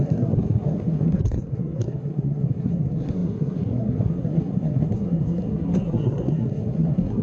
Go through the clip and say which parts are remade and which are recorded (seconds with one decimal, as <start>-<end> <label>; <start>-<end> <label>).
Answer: 0.0-7.2 remade